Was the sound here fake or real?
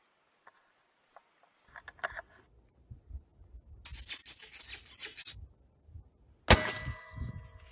real